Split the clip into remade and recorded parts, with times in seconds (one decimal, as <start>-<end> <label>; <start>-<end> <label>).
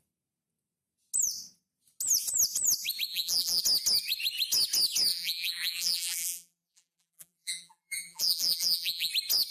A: 0.0-3.1 recorded; 3.1-3.6 remade; 3.6-5.1 recorded; 5.1-9.1 remade; 9.1-9.5 recorded